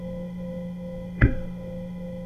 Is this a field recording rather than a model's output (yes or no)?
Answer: no